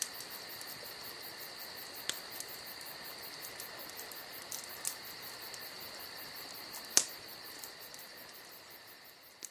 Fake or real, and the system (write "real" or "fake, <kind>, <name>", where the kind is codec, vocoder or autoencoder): real